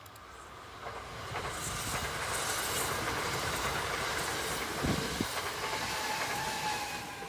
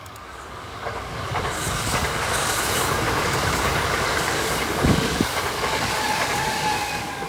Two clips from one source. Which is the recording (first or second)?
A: first